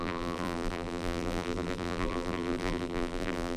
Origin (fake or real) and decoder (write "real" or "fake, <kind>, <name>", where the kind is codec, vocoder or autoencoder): fake, vocoder, BigVGAN v2